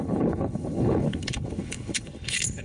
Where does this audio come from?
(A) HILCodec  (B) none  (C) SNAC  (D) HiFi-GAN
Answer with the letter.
A